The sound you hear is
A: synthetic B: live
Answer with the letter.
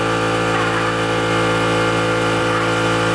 A